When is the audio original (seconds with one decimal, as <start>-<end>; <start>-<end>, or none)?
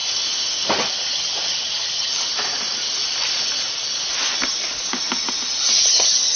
0.0-0.9; 2.1-5.9